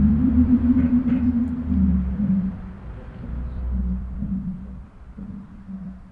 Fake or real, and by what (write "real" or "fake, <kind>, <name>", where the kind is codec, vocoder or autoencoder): fake, vocoder, BigVGAN v2